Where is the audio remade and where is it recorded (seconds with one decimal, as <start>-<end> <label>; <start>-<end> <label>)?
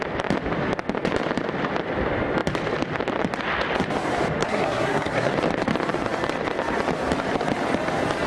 0.0-4.4 recorded; 4.4-5.3 remade; 5.3-8.3 recorded